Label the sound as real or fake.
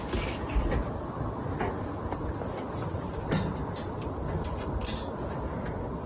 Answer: real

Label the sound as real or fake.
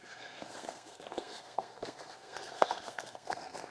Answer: fake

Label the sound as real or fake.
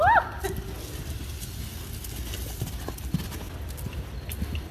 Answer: real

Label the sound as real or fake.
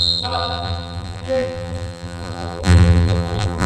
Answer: fake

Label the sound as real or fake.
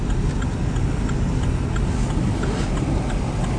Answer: real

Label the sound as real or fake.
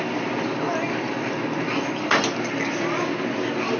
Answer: real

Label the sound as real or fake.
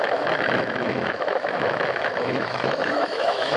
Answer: fake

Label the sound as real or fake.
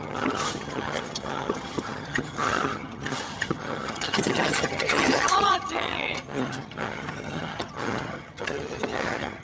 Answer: fake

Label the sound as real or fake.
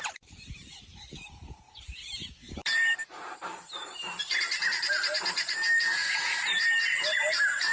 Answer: fake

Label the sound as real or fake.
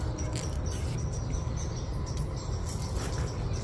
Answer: real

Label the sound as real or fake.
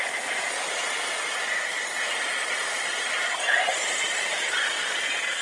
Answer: real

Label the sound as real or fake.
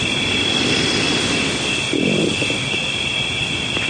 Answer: real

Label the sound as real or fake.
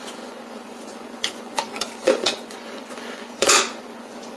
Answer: fake